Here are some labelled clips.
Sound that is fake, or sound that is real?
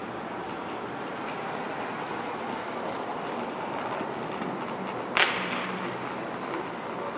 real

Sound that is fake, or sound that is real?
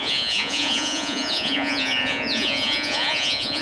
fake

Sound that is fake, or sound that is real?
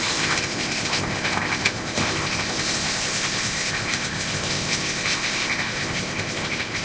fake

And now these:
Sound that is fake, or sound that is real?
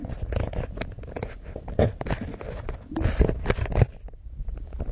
real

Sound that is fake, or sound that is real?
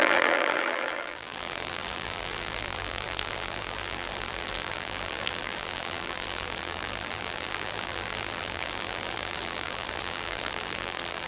fake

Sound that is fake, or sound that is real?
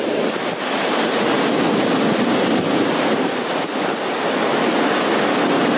real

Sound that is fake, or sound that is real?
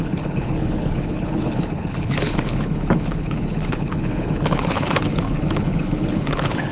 fake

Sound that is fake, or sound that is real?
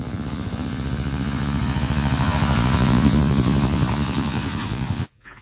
fake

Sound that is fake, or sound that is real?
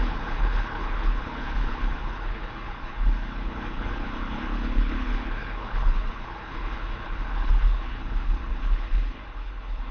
fake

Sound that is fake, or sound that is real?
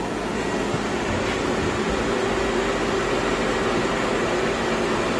real